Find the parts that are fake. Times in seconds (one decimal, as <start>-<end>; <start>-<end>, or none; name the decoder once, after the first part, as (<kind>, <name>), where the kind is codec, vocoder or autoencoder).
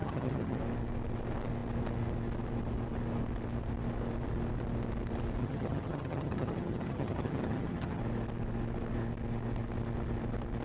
0.0-0.6 (vocoder, HiFi-GAN); 5.4-8.0